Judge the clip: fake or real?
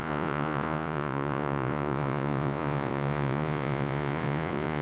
fake